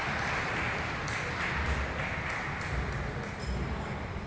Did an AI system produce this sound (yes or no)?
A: no